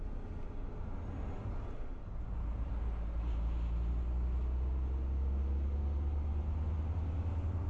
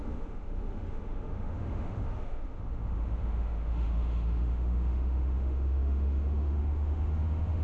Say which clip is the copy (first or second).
second